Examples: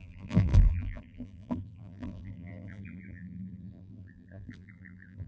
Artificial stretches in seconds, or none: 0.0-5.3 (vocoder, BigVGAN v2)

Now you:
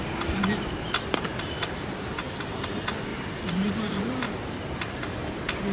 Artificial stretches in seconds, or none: 0.0-2.7 (vocoder, BigVGAN v2); 3.1-4.4

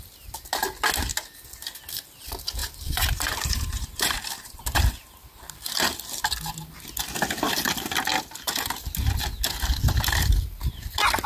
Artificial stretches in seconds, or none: 2.6-4.6 (vocoder, BigVGAN v2)

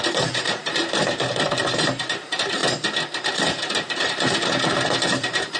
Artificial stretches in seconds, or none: 0.0-2.6 (vocoder, BigVGAN v2); 3.3-5.6

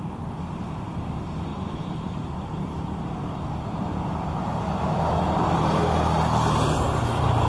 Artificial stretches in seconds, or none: 1.5-4.8 (vocoder, BigVGAN v2)

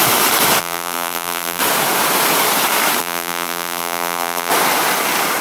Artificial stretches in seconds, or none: 0.6-1.6 (vocoder, BigVGAN v2); 3.0-4.5

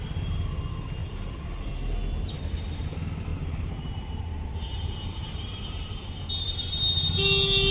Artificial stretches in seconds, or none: 1.0-1.7 (vocoder, BigVGAN v2); 3.3-6.3